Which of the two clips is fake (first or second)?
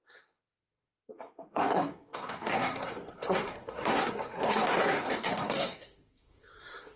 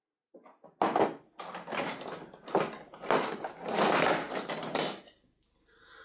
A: first